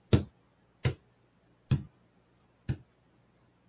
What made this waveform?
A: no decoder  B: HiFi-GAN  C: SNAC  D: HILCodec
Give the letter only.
A